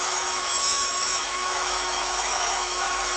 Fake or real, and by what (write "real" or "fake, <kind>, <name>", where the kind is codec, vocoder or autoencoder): fake, autoencoder, DAC-VAE